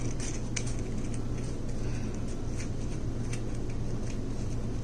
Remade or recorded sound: recorded